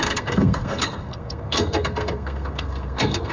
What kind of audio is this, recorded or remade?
remade